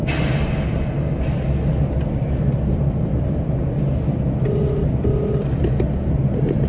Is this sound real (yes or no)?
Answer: yes